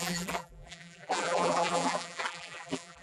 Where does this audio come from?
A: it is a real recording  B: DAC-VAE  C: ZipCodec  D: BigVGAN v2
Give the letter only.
D